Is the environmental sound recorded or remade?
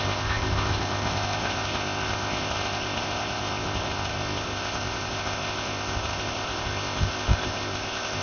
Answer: remade